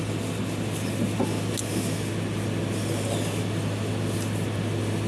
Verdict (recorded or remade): recorded